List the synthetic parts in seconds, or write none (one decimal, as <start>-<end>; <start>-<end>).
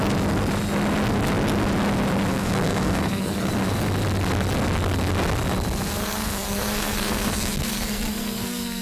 2.3-3.5; 6.0-8.8